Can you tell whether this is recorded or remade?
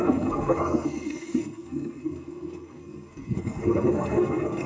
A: remade